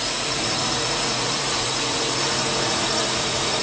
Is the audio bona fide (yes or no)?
no